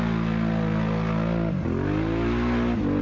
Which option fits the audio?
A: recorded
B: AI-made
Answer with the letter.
A